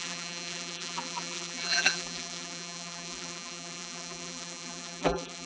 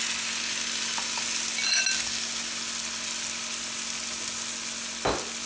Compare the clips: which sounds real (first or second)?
second